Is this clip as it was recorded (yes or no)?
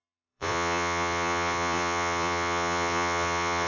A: no